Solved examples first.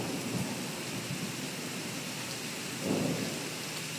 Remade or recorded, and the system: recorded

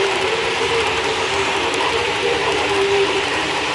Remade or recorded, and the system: remade, vocoder, BigVGAN v2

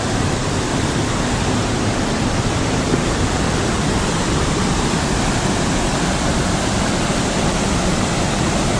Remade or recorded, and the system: remade, vocoder, BigVGAN v2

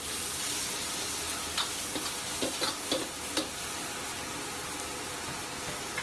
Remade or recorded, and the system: recorded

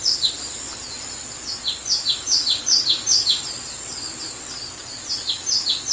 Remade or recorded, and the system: recorded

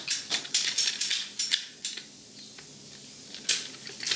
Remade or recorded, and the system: recorded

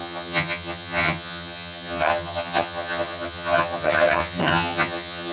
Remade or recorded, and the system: remade, vocoder, HiFi-GAN